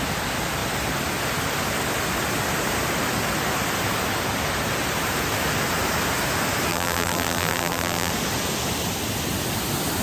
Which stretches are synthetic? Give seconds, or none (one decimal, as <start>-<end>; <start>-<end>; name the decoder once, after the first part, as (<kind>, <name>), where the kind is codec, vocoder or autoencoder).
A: 6.7-8.1 (vocoder, BigVGAN v2)